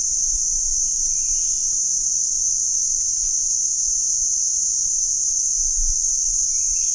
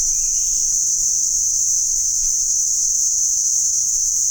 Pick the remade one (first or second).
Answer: first